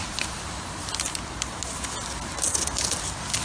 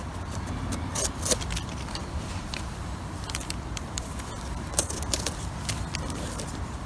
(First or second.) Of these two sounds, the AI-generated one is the second